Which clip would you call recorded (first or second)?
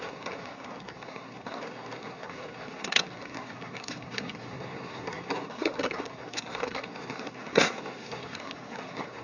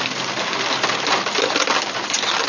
second